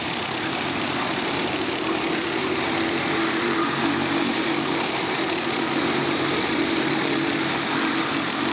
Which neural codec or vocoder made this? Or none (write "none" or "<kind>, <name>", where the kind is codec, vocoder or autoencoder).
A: vocoder, BigVGAN v2